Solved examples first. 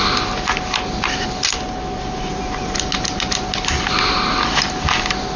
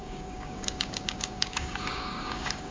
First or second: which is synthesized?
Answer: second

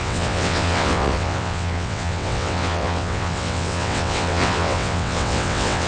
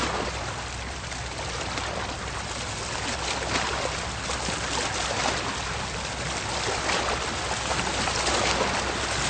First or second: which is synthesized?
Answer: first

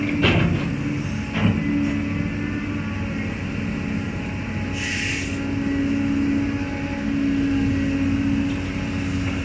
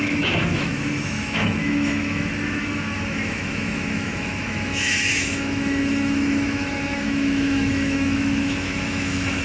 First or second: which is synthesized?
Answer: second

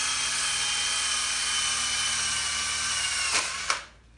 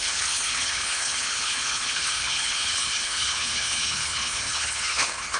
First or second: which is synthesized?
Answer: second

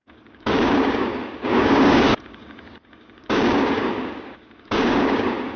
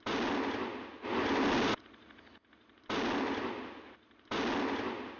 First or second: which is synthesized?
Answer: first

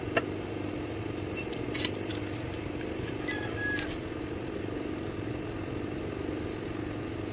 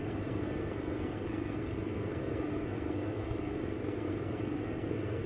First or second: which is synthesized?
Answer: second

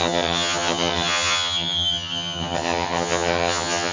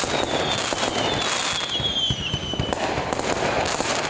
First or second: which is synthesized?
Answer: first